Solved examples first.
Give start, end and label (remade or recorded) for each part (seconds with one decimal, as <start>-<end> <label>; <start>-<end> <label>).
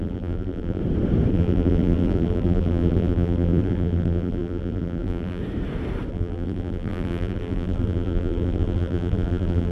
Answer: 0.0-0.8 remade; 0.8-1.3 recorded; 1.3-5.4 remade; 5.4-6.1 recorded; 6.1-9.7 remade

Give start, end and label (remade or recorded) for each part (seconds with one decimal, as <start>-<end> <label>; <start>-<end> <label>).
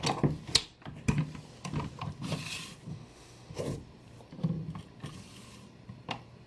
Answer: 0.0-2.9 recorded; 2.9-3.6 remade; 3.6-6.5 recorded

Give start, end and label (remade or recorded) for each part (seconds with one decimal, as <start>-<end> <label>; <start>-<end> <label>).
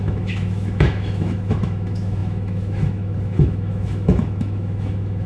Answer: 0.0-5.3 remade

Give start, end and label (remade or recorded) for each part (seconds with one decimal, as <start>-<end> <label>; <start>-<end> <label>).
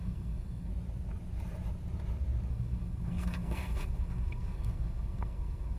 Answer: 0.0-0.7 remade; 0.7-2.5 recorded; 2.5-5.8 remade